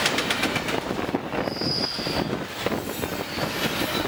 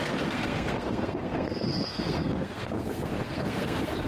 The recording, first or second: first